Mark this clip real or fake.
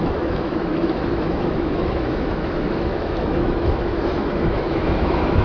fake